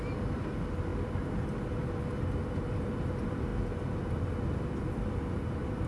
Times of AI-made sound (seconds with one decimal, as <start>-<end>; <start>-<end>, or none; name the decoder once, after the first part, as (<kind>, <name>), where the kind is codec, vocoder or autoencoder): none